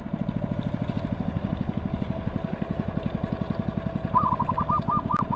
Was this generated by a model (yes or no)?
no